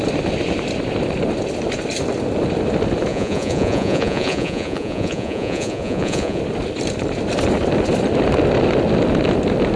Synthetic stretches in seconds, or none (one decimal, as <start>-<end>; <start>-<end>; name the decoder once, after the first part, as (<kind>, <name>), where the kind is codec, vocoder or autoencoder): 3.1-6.4 (vocoder, Vocos)